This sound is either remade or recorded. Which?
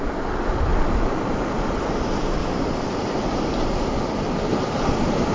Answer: recorded